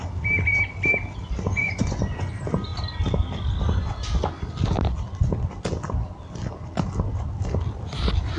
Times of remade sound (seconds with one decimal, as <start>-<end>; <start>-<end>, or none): 1.5-2.3